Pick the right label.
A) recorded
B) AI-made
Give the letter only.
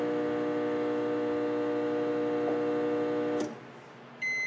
A